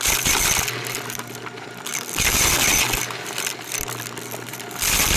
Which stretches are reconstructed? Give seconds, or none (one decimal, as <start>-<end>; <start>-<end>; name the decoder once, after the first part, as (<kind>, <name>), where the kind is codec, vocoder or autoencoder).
none